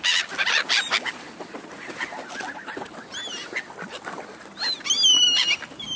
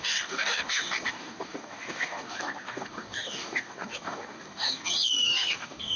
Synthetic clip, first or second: second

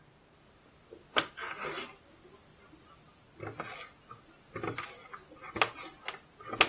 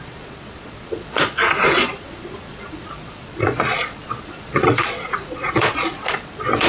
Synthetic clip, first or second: second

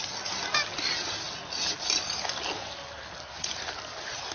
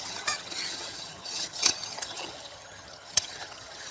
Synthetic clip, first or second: second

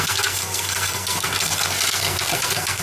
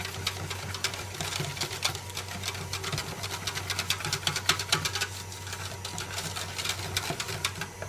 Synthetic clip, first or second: first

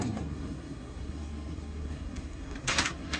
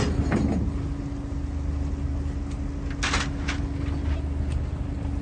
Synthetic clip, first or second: first